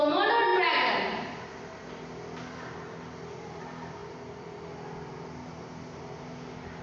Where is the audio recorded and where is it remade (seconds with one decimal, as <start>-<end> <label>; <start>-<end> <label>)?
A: 0.0-6.8 recorded